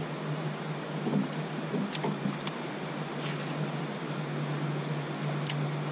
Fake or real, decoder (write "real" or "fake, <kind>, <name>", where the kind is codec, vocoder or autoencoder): real